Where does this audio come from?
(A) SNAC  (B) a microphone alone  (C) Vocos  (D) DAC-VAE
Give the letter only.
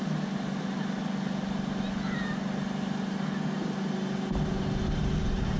B